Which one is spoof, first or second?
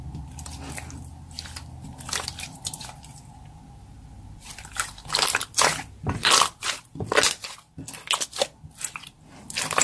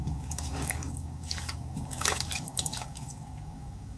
second